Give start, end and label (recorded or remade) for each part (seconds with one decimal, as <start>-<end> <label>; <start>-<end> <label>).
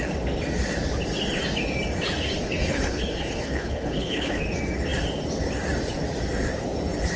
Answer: 0.0-2.4 recorded; 2.4-4.4 remade; 4.4-7.2 recorded